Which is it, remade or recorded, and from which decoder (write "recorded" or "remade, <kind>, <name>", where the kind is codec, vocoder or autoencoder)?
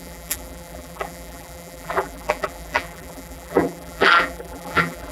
remade, vocoder, BigVGAN v2